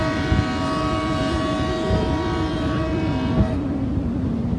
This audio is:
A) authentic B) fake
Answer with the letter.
A